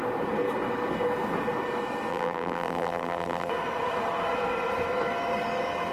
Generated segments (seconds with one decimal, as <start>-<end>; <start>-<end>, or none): 2.1-3.5